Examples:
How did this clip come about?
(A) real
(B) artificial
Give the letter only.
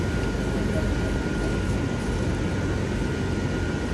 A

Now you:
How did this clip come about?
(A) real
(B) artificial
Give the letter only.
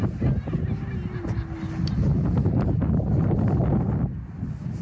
A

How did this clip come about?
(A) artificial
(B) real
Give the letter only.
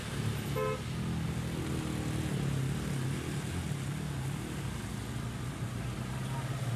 B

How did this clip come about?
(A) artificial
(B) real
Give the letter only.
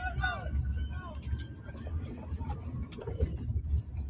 A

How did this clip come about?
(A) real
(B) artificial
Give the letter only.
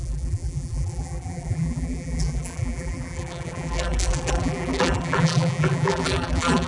B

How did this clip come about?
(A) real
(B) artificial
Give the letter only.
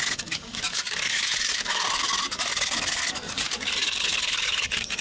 B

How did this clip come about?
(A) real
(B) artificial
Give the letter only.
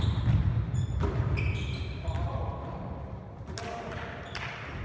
A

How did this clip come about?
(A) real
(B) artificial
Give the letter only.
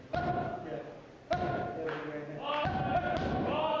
A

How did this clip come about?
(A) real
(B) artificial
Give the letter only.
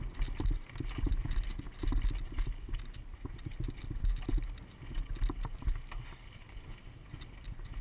A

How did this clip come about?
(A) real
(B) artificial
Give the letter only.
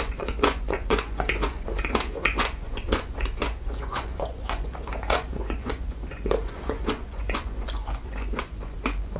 B